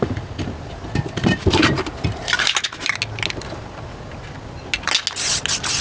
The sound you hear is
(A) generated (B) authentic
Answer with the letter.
B